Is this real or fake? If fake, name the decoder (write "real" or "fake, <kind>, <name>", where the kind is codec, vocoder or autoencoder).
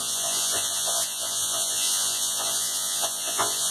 fake, vocoder, Vocos